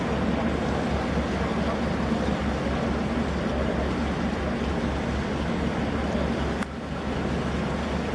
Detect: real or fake real